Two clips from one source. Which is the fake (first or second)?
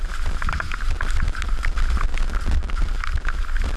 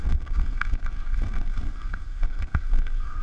second